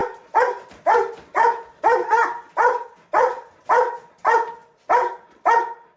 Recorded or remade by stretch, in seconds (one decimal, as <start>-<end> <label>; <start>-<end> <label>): 0.0-6.0 recorded